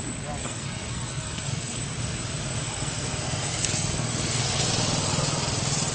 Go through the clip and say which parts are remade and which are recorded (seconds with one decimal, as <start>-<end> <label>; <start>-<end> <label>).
0.0-0.4 recorded; 0.4-1.8 remade; 1.8-2.6 recorded; 2.6-4.6 remade; 4.6-5.9 recorded

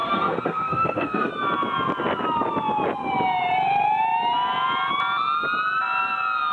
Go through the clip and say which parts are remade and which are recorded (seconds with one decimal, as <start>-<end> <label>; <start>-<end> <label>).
0.0-1.3 remade; 1.3-6.5 recorded

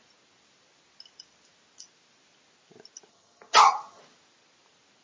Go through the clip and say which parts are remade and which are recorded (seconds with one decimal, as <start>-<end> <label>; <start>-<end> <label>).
0.0-3.1 recorded; 3.1-4.0 remade; 4.0-5.0 recorded